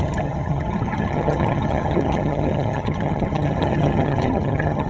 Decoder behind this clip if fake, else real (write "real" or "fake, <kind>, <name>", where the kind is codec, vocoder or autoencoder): fake, vocoder, HiFi-GAN